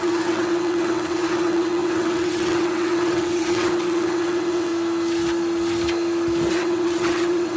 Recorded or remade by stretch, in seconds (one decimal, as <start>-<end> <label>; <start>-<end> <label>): 0.0-4.7 remade; 4.7-6.5 recorded; 6.5-7.6 remade